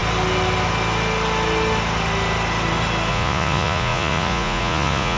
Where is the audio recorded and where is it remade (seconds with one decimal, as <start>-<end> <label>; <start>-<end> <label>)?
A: 0.0-3.1 recorded; 3.1-5.2 remade